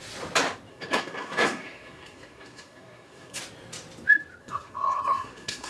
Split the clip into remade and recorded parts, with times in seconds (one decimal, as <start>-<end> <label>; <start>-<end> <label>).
0.0-0.7 recorded; 0.7-3.4 remade; 3.4-4.4 recorded; 4.4-5.7 remade